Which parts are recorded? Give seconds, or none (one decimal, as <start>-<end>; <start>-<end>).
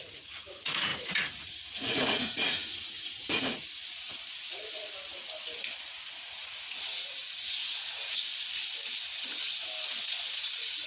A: 4.1-6.2; 7.6-10.4